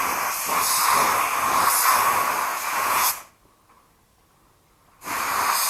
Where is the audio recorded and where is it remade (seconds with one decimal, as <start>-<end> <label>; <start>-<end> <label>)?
0.0-2.5 recorded; 2.5-3.3 remade; 3.3-5.7 recorded